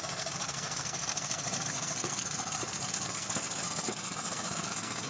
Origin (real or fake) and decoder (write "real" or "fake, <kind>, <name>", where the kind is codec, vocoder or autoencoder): fake, codec, SNAC